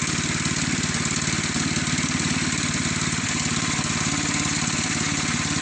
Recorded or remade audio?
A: remade